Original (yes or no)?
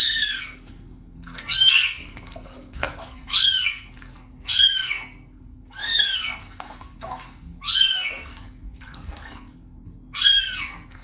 no